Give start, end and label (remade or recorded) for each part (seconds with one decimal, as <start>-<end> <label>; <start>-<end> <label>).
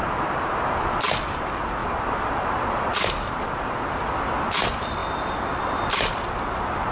0.0-6.9 recorded